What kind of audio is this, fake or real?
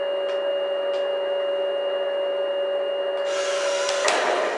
real